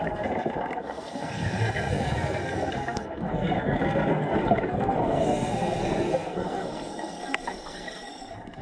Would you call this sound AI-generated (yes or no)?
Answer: yes